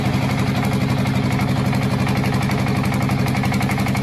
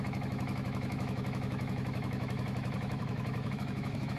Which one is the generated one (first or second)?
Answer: second